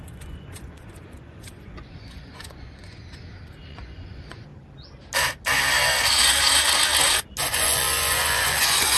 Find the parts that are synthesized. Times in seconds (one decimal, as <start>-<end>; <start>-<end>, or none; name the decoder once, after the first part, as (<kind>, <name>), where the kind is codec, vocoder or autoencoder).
0.0-3.0 (vocoder, Vocos); 3.7-4.5; 7.4-9.0